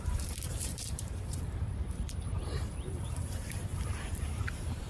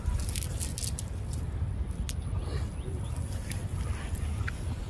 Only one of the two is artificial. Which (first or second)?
first